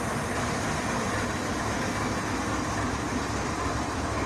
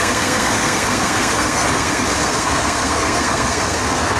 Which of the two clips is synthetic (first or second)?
second